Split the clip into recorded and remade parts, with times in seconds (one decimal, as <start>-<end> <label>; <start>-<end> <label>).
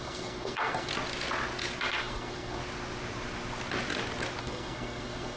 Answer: 0.0-0.9 remade; 0.9-2.0 recorded; 2.0-2.6 remade; 2.6-4.4 recorded; 4.4-5.4 remade